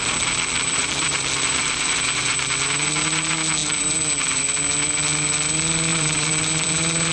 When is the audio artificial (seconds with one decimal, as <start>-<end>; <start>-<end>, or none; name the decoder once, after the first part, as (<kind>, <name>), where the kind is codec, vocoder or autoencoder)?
0.8-2.5 (vocoder, BigVGAN v2); 3.6-4.4; 5.9-7.1